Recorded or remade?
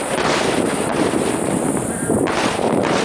remade